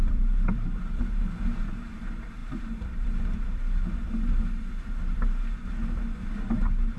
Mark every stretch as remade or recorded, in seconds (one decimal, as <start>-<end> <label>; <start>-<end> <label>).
0.0-1.0 remade; 1.0-2.4 recorded; 2.4-5.7 remade; 5.7-7.0 recorded